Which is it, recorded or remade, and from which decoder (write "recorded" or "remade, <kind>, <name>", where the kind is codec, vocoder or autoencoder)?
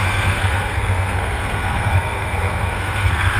remade, codec, SNAC